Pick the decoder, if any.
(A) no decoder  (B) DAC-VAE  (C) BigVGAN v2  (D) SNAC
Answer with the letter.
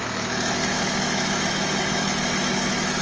B